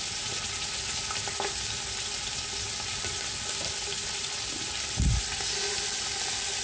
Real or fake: real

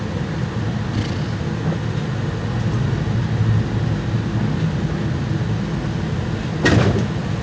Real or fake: real